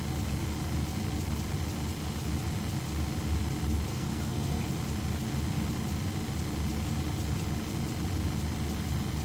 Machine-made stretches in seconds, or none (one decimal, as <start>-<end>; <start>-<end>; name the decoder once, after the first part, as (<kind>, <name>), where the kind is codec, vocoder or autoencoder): 3.9-4.6 (codec, SNAC)